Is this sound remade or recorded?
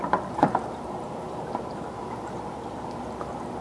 remade